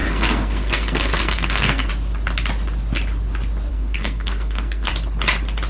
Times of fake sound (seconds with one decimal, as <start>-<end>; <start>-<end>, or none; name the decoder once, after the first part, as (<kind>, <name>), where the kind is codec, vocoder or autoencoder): 0.0-1.9 (codec, SNAC); 3.7-4.9